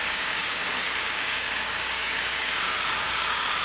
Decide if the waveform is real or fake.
fake